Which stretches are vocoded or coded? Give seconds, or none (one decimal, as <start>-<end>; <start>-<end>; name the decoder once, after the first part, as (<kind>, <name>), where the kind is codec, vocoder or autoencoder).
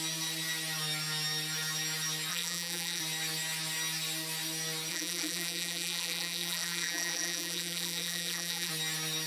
2.3-3.0 (vocoder, BigVGAN v2); 4.9-8.7